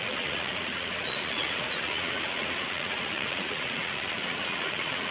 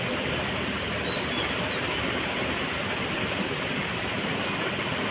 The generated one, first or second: first